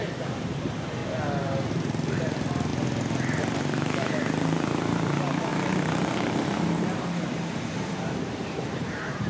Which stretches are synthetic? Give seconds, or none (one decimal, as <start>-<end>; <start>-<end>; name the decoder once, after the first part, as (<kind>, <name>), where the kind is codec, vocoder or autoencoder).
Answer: 0.0-1.0 (vocoder, BigVGAN v2); 1.7-2.7; 3.4-9.3